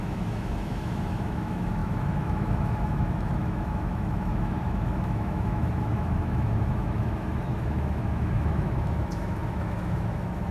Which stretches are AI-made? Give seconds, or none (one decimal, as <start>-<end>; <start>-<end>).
0.0-10.5